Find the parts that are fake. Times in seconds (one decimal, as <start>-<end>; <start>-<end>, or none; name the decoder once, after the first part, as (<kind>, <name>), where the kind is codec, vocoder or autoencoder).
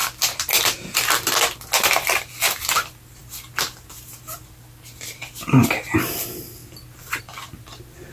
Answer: none